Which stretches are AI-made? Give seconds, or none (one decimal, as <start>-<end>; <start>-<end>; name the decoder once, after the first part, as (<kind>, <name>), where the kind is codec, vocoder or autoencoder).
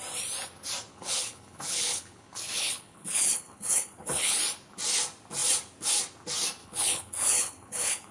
0.9-4.4 (codec, HILCodec); 6.6-8.1